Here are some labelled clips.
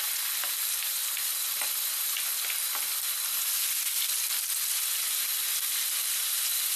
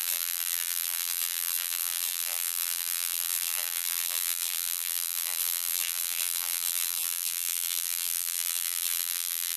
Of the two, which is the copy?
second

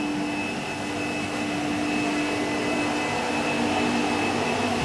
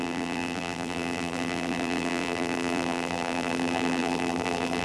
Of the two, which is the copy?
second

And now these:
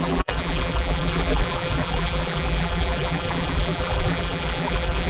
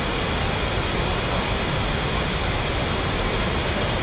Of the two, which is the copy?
first